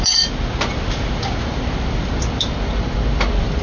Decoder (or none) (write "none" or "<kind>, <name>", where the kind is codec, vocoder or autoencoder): none